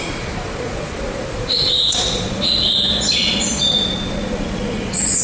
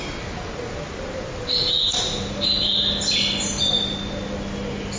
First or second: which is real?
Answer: second